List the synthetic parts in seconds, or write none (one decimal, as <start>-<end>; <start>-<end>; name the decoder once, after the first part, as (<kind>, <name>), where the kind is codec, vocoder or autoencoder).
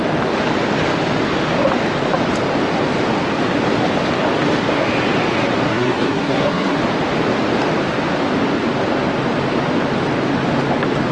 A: 5.7-6.8 (codec, SNAC)